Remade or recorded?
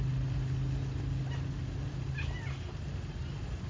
recorded